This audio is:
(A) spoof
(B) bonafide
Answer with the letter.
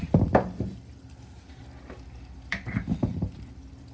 A